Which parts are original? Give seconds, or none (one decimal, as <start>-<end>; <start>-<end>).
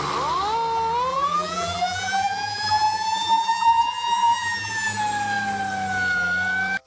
0.0-1.1; 5.0-6.9